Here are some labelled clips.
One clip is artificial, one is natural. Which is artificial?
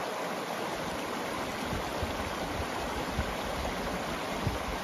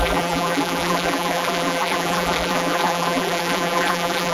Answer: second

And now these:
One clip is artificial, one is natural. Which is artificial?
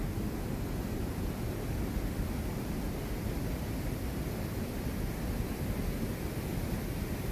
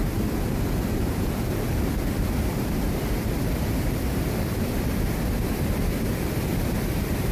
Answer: second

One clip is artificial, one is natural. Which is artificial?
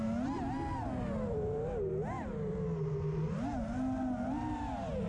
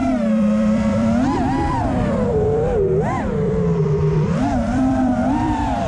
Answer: second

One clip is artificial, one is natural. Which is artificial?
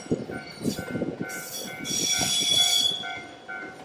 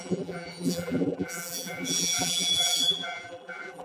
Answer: second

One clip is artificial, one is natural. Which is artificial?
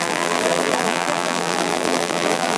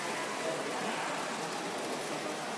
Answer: first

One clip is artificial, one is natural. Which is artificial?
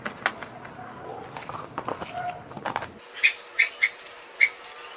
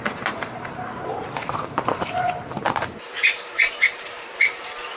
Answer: second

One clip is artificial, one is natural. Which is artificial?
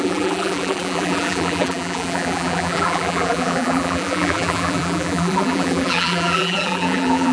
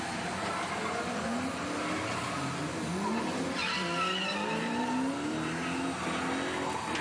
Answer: first